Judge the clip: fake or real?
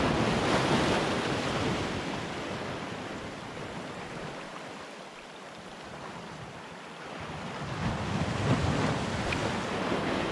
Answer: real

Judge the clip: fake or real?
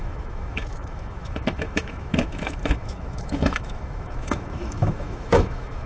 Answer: fake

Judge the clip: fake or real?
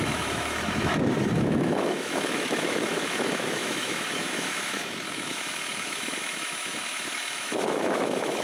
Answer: fake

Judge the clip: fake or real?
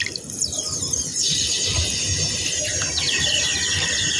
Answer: real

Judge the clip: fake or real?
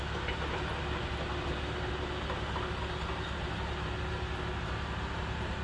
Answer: real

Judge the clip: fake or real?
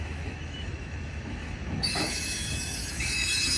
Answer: fake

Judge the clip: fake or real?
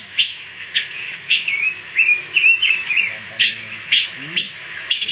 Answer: fake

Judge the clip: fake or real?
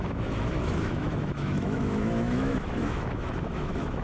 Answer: fake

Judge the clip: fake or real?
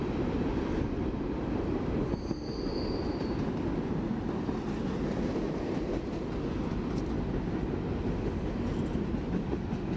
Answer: real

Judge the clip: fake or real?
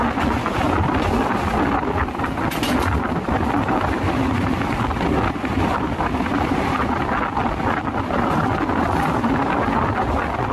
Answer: real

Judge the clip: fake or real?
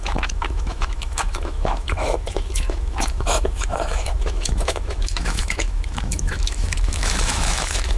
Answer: fake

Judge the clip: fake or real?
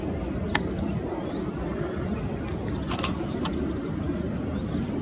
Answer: real